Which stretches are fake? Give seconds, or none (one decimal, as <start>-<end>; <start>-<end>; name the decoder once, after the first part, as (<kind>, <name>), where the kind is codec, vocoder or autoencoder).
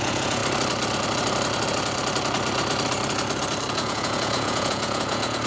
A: 0.0-0.4 (vocoder, Vocos); 3.7-5.5